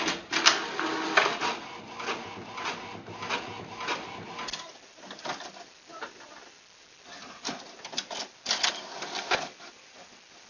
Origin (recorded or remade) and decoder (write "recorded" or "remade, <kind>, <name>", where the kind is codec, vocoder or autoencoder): recorded